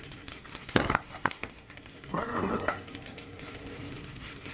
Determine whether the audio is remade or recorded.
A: remade